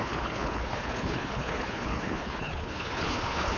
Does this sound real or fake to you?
fake